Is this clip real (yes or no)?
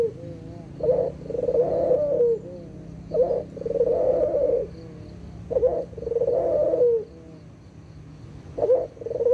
yes